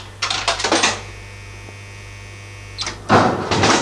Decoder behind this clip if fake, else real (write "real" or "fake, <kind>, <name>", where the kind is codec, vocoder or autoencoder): real